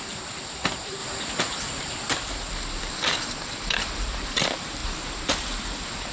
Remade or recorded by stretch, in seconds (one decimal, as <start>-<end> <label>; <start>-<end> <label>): 0.0-1.0 remade; 1.0-2.1 recorded; 2.1-4.8 remade; 4.8-6.1 recorded